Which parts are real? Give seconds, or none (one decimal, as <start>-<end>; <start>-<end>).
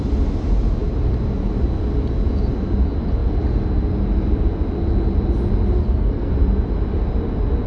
0.0-5.8; 6.3-7.7